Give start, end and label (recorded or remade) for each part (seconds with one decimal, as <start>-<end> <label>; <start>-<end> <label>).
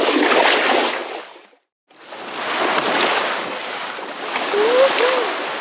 0.0-5.6 recorded